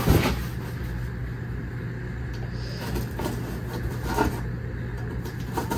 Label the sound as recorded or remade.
recorded